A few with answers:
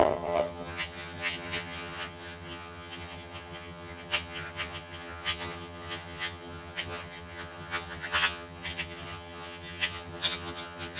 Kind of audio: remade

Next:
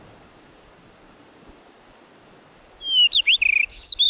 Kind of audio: recorded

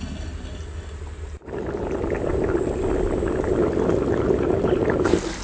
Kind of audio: recorded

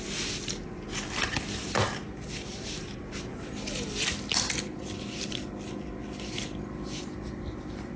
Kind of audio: recorded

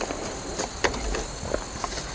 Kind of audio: recorded